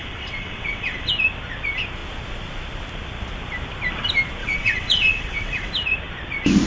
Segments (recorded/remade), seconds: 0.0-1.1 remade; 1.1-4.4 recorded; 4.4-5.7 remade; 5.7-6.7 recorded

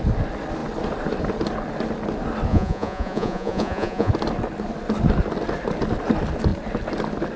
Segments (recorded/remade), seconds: 0.0-2.5 recorded; 2.5-4.1 remade; 4.1-7.4 recorded

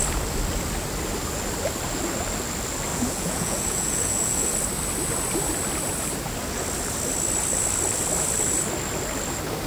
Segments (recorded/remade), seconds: 0.0-2.9 recorded; 2.9-4.5 remade; 4.5-9.7 recorded

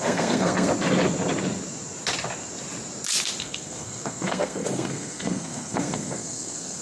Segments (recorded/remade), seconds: 0.0-0.7 remade; 0.7-3.4 recorded; 3.4-6.8 remade

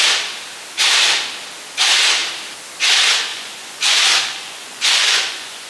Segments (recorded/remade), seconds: 0.0-3.3 recorded; 3.3-5.7 remade